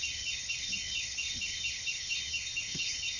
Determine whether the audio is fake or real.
fake